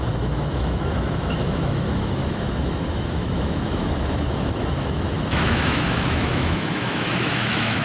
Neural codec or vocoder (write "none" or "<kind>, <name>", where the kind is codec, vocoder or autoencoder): autoencoder, DAC-VAE